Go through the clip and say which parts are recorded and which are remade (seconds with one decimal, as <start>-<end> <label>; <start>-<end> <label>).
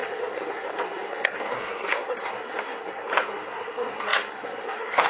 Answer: 0.0-5.1 remade